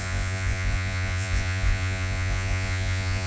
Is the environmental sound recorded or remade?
remade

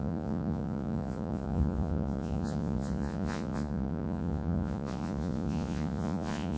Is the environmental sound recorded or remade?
remade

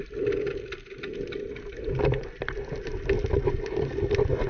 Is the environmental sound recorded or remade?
recorded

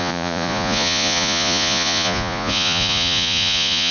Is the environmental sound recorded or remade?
remade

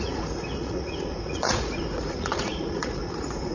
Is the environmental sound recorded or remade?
remade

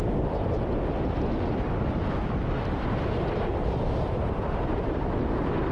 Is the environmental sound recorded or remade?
recorded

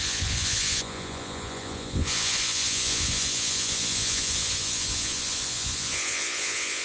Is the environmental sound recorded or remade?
remade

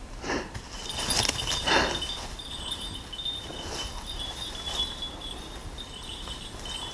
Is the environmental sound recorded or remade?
recorded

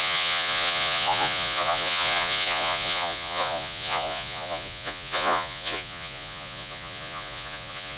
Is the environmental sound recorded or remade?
remade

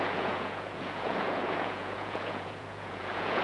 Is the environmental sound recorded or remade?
remade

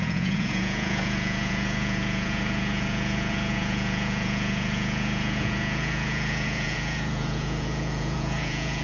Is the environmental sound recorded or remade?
remade